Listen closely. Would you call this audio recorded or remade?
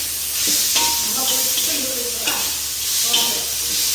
recorded